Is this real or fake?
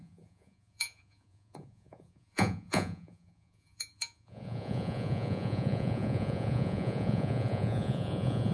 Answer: fake